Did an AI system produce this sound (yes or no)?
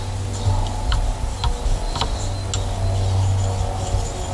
no